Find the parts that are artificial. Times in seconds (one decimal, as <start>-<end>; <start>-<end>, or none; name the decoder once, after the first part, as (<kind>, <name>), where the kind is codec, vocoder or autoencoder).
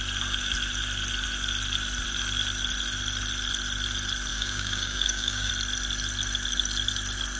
4.3-5.5 (codec, DAC)